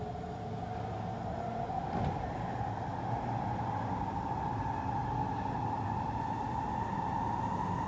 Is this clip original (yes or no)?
yes